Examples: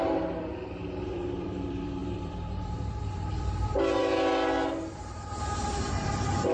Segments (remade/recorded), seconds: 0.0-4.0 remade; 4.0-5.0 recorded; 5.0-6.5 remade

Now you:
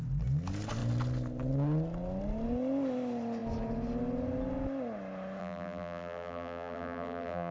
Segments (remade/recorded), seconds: 0.0-5.4 recorded; 5.4-7.5 remade

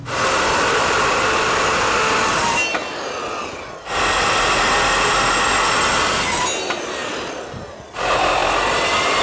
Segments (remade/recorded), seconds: 0.0-9.2 recorded

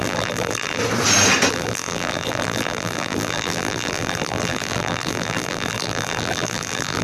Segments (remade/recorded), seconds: 0.0-0.8 remade; 0.8-1.5 recorded; 1.5-7.0 remade

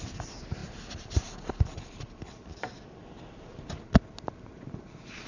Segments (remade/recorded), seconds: 0.0-0.6 recorded; 0.6-3.8 remade; 3.8-5.3 recorded

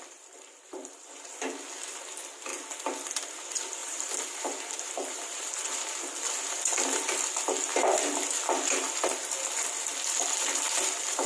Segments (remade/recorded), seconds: 0.0-3.8 recorded; 3.8-5.8 remade; 5.8-11.3 recorded

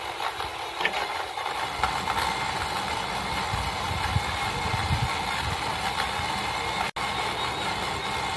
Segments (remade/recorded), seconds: 0.0-8.4 recorded

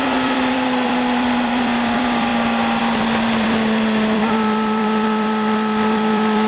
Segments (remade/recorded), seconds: 0.0-2.3 remade; 2.3-2.8 recorded; 2.8-6.5 remade